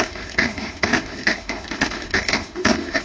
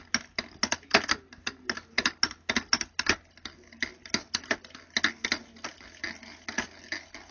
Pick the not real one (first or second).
first